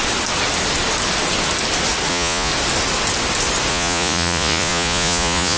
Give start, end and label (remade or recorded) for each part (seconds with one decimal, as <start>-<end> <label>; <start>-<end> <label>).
0.0-2.1 recorded; 2.1-2.5 remade; 2.5-3.7 recorded; 3.7-5.6 remade